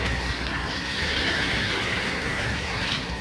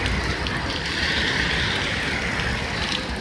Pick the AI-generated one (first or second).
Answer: first